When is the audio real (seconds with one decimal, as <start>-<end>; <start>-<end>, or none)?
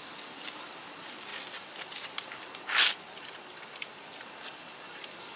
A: 0.0-5.4